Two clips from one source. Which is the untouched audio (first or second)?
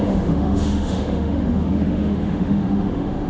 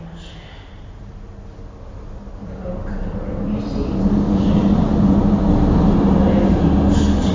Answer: second